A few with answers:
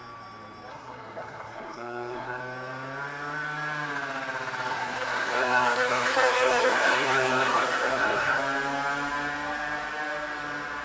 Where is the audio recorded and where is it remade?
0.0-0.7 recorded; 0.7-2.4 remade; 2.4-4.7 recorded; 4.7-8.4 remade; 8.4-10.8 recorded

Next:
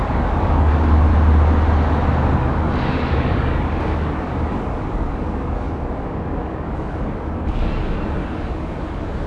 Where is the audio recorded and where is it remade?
0.0-1.1 remade; 1.1-2.4 recorded; 2.4-9.3 remade

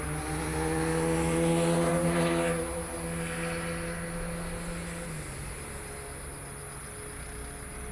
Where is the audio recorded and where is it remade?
0.0-7.9 recorded

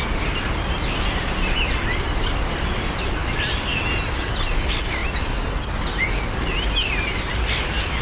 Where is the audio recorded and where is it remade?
0.0-8.0 recorded

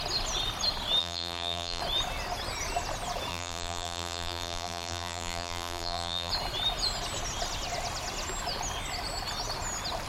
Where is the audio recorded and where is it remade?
0.0-1.0 recorded; 1.0-1.8 remade; 1.8-3.3 recorded; 3.3-6.3 remade; 6.3-10.1 recorded

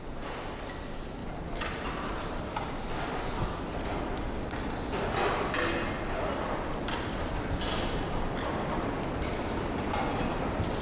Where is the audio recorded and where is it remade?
0.0-1.2 recorded; 1.2-2.7 remade; 2.7-10.8 recorded